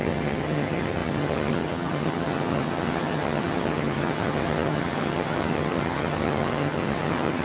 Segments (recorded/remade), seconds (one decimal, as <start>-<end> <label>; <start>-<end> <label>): 0.0-7.4 remade